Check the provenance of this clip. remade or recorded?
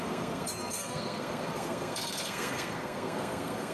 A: remade